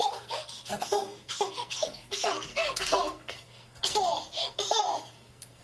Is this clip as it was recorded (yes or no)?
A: no